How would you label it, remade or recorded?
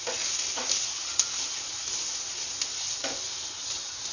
recorded